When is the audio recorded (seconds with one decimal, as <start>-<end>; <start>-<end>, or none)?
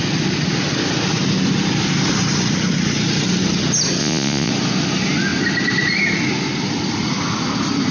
0.0-4.0; 4.5-7.9